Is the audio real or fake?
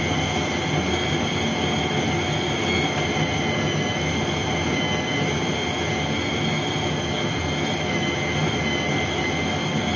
real